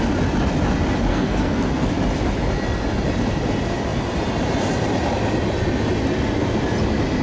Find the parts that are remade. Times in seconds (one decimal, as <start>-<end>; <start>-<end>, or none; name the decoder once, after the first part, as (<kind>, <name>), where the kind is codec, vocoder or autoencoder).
1.1-1.9 (codec, SNAC)

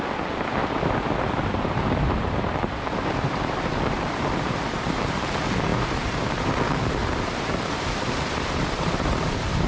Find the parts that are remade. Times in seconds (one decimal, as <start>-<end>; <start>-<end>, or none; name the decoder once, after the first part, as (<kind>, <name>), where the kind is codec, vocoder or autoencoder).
0.6-5.0 (vocoder, BigVGAN v2); 5.7-6.5; 7.0-9.7

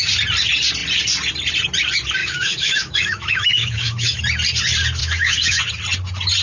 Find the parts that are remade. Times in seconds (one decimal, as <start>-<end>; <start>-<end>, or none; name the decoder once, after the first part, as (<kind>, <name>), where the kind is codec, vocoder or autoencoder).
2.2-4.2 (autoencoder, DAC-VAE); 5.0-5.6

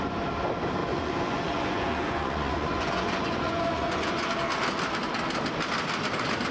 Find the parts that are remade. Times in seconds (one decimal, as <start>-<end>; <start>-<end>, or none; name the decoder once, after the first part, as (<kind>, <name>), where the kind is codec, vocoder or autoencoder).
0.8-4.3 (vocoder, Vocos)

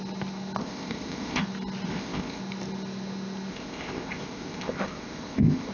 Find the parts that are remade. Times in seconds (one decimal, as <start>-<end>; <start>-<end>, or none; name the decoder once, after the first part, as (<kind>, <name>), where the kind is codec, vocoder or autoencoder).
0.6-1.4 (codec, ZipCodec); 1.9-2.4; 3.5-5.7